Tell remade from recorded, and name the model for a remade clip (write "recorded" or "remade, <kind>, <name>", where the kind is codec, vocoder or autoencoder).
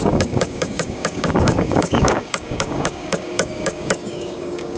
remade, codec, DAC